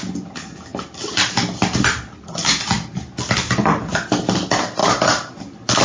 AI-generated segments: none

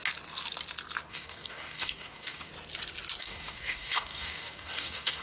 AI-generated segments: 1.1-2.5; 3.2-5.2

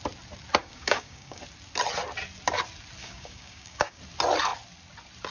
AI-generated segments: 0.6-1.4; 3.0-4.0

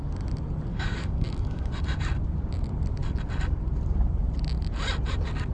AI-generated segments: 0.7-1.7

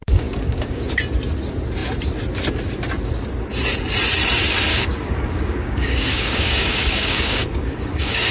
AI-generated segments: 0.0-0.9; 4.7-8.3

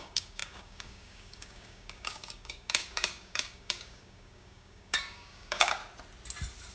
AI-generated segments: 0.0-5.8